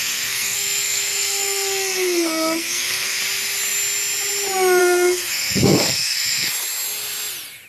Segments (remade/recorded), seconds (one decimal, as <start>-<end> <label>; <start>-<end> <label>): 0.0-3.2 remade; 3.2-4.8 recorded; 4.8-6.5 remade; 6.5-7.7 recorded